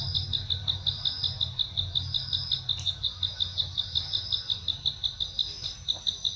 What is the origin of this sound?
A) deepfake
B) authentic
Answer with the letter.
B